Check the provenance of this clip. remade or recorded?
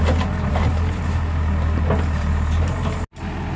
recorded